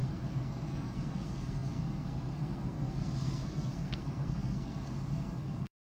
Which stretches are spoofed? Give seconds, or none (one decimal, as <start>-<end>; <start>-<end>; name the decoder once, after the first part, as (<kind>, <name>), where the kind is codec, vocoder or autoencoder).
0.0-5.9 (codec, SNAC)